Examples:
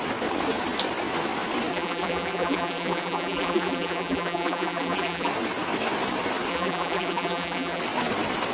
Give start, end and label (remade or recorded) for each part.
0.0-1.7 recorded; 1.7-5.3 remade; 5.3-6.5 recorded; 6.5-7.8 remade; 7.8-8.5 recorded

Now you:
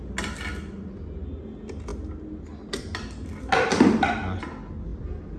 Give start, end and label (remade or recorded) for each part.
0.0-4.9 recorded; 4.9-5.4 remade

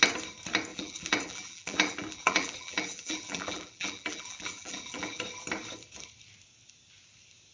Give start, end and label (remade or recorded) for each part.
0.0-0.7 recorded; 0.7-5.2 remade; 5.2-7.5 recorded

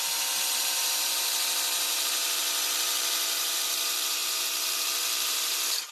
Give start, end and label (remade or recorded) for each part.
0.0-5.9 remade

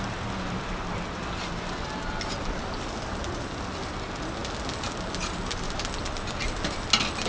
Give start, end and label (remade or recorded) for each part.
0.0-7.3 recorded

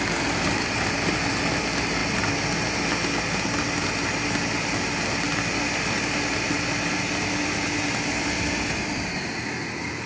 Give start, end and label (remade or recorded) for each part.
0.0-10.1 recorded

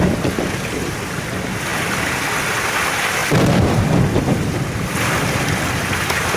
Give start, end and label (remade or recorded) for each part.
0.0-3.2 recorded; 3.2-3.8 remade; 3.8-6.4 recorded

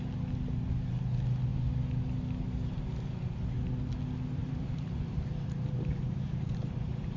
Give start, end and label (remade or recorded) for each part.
0.0-4.4 recorded; 4.4-7.2 remade